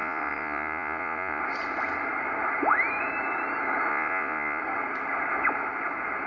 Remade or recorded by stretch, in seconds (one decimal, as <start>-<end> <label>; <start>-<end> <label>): 0.0-1.4 remade; 1.4-3.9 recorded; 3.9-4.6 remade; 4.6-6.3 recorded